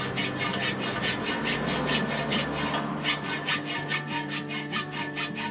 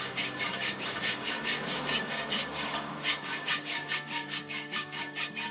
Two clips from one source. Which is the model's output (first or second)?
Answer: second